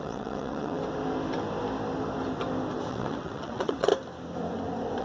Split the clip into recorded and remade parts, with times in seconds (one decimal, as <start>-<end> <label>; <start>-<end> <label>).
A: 0.0-0.8 remade; 0.8-2.9 recorded; 2.9-3.9 remade; 3.9-5.0 recorded